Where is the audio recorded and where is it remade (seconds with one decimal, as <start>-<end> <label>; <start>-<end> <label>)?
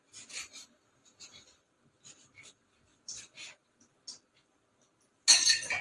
0.0-5.8 recorded